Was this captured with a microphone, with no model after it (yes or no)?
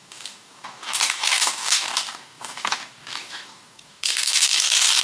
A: no